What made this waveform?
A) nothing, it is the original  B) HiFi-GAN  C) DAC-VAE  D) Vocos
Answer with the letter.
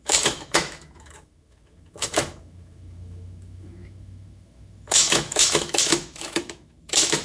C